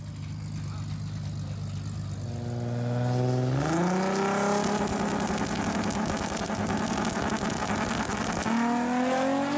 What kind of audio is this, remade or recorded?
recorded